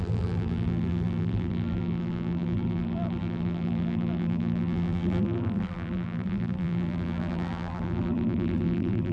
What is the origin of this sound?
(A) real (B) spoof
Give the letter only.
B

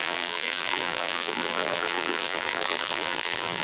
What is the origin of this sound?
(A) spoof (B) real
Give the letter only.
A